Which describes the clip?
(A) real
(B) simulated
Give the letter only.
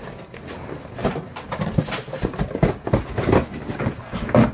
A